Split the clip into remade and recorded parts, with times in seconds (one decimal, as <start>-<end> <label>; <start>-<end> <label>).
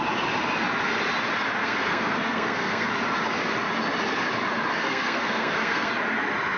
0.0-1.6 recorded; 1.6-2.9 remade; 2.9-4.8 recorded; 4.8-5.9 remade; 5.9-6.6 recorded